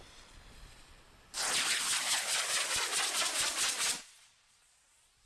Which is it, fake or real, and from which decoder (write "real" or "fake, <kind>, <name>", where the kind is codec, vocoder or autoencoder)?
fake, vocoder, BigVGAN v2